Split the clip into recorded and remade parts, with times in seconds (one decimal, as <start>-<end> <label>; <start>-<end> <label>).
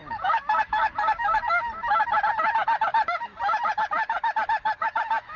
0.0-1.5 remade; 1.5-5.4 recorded